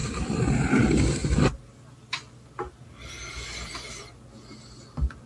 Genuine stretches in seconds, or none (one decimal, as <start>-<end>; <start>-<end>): 0.0-5.3

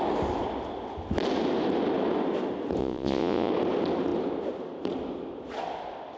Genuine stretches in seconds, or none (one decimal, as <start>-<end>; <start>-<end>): 0.0-2.8; 3.5-6.2

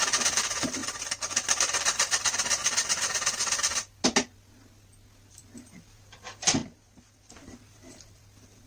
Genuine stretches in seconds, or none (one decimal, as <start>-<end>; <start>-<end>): 0.8-1.6; 2.6-5.3; 6.6-7.3

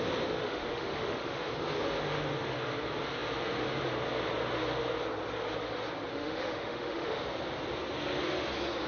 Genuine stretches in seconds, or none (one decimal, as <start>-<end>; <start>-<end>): 0.0-0.4; 1.5-6.1; 7.2-8.9

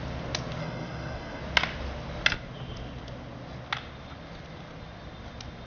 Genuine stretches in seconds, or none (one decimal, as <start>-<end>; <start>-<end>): 0.0-0.6; 1.4-5.7

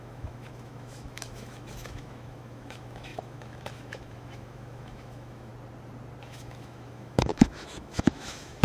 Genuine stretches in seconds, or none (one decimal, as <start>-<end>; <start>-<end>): 5.5-6.2

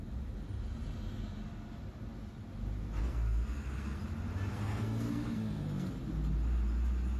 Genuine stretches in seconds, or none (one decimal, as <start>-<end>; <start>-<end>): 0.0-3.0; 4.0-4.5; 5.9-7.2

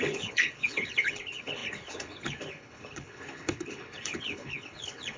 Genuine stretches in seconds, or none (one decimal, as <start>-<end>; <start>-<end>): none